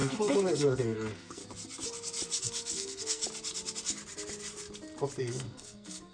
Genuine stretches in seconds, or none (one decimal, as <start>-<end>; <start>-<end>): 1.4-2.4; 3.2-5.2